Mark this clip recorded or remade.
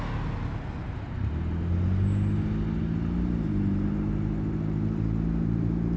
recorded